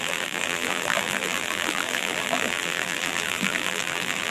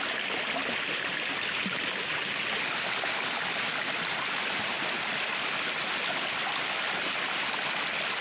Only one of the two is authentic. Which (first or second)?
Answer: second